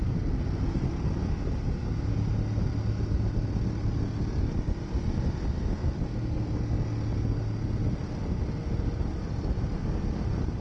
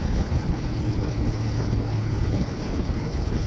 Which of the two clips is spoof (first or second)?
second